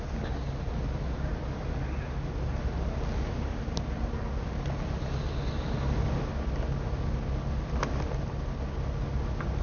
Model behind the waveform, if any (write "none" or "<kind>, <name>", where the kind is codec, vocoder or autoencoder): none